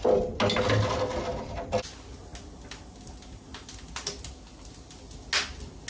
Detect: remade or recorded recorded